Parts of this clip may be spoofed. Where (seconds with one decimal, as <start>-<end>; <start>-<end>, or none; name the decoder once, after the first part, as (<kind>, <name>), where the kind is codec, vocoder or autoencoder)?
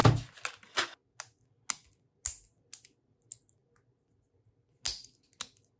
none